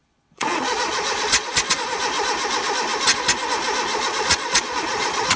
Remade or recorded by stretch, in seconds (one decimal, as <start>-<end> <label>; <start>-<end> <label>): 0.0-2.0 remade; 2.0-3.9 recorded; 3.9-5.4 remade